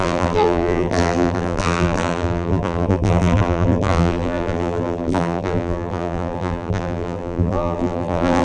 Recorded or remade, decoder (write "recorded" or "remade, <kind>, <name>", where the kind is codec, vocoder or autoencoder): remade, vocoder, BigVGAN v2